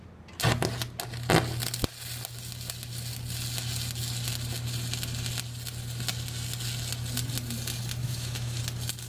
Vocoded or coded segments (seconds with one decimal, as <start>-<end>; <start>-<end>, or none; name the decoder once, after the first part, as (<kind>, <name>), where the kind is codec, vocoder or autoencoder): 8.0-8.6 (autoencoder, DAC-VAE)